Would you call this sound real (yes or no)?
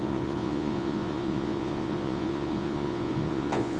no